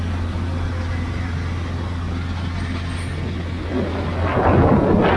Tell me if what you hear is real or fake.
real